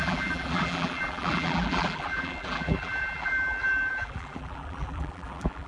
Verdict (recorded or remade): remade